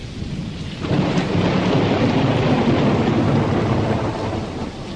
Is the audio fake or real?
real